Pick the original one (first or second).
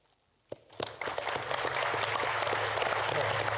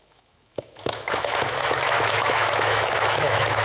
first